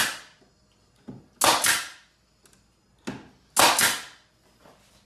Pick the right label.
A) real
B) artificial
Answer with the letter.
A